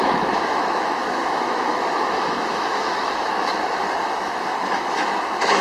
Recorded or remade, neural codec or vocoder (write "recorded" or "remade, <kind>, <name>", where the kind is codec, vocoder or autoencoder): remade, autoencoder, DAC-VAE